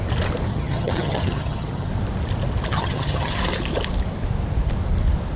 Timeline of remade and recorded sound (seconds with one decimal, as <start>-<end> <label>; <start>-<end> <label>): 0.0-0.5 recorded; 0.5-1.9 remade; 1.9-2.7 recorded; 2.7-3.4 remade; 3.4-5.4 recorded